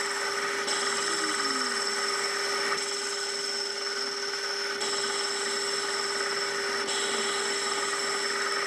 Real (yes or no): yes